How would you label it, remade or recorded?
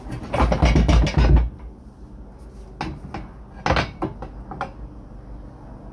recorded